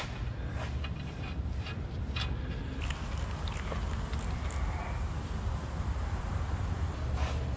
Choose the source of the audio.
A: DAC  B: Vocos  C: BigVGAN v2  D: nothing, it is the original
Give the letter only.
D